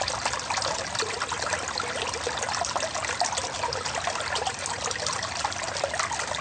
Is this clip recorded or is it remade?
recorded